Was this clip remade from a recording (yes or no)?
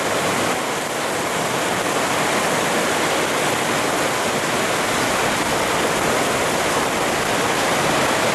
no